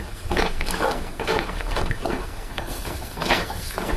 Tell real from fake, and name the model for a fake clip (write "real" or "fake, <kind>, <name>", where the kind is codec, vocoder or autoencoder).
fake, codec, SNAC